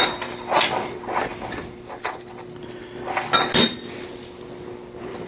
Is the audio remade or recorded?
recorded